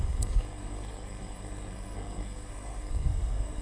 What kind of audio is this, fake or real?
fake